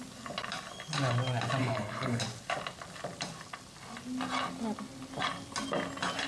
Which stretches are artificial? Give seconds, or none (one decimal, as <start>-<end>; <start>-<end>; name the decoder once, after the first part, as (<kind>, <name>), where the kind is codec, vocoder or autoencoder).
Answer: 1.6-2.2 (codec, HILCodec)